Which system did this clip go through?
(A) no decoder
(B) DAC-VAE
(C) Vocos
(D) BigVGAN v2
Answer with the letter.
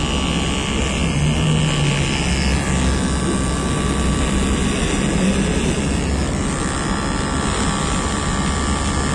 A